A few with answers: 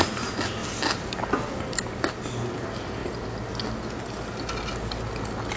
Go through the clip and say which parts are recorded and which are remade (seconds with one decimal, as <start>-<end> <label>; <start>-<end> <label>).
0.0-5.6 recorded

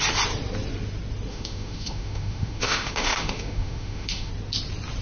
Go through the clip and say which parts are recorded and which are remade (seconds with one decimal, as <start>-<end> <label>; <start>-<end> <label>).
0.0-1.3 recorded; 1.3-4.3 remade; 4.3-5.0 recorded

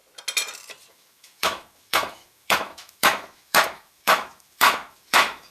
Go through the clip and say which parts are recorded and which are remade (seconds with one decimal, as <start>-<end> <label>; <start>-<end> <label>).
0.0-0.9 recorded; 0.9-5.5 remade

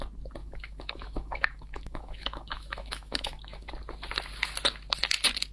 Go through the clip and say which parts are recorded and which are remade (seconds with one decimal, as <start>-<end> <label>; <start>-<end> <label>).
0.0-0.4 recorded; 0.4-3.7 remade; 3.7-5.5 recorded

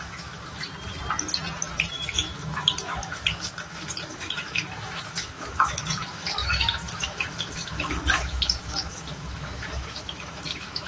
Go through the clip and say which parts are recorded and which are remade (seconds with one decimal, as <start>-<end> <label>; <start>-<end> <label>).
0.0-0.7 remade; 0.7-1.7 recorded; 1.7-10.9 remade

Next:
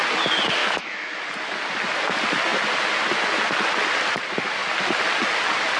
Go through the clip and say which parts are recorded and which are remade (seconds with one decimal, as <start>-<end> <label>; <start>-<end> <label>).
0.0-0.6 recorded; 0.6-1.2 remade; 1.2-5.8 recorded

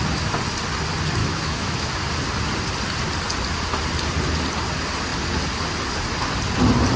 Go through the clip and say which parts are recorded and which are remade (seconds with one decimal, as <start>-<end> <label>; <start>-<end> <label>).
0.0-1.2 recorded; 1.2-1.9 remade; 1.9-7.0 recorded

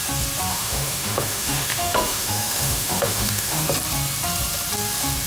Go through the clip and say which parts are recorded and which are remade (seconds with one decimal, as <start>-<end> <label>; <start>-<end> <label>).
0.0-0.5 recorded; 0.5-3.7 remade; 3.7-5.3 recorded